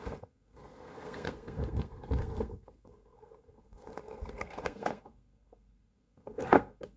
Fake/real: fake